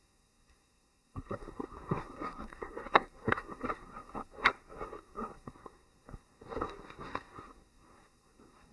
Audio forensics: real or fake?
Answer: fake